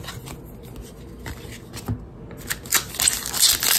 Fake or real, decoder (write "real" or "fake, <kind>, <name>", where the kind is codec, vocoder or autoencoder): real